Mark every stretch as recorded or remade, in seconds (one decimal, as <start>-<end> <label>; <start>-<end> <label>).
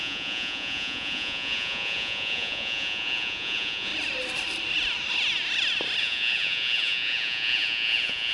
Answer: 0.0-3.9 remade; 3.9-6.0 recorded; 6.0-8.3 remade